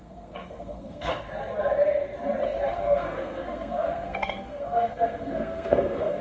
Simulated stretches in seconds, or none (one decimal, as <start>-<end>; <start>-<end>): 0.0-1.1; 2.7-6.2